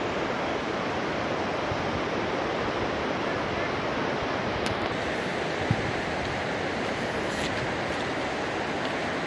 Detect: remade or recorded recorded